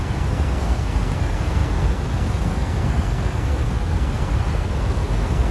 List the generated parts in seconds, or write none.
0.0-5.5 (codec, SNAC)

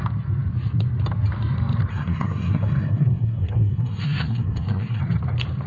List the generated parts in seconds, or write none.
1.9-5.0 (codec, SNAC)

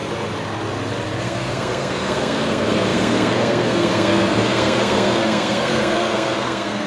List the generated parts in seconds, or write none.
1.2-6.9 (codec, SNAC)

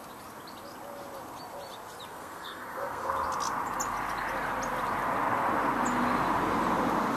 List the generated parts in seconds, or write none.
2.1-3.1 (codec, SNAC)